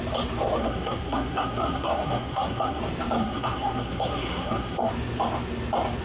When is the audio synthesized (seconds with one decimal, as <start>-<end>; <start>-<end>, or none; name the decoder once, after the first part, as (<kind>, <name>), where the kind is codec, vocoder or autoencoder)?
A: 0.6-2.8 (codec, SNAC); 3.2-4.9